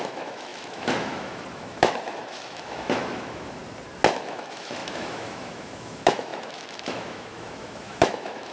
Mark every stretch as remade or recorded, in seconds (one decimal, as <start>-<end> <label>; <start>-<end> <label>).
0.0-3.6 remade; 3.6-4.1 recorded; 4.1-8.5 remade